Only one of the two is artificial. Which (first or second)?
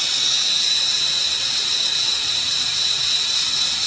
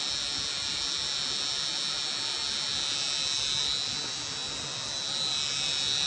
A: first